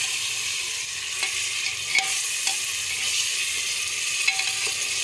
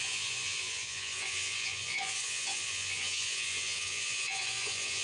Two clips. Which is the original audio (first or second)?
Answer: first